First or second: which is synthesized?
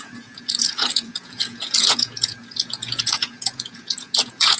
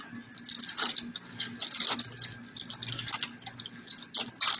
first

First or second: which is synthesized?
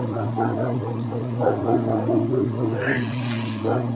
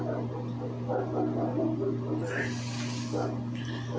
first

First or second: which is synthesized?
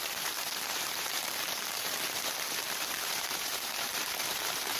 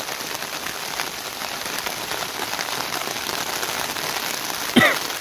first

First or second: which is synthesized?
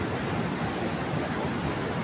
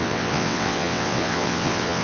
second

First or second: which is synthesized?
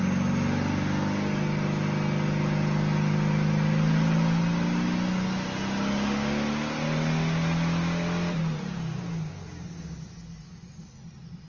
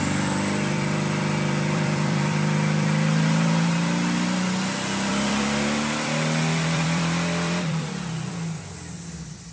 second